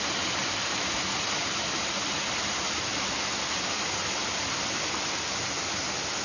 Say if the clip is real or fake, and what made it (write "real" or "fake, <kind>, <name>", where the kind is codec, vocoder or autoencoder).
real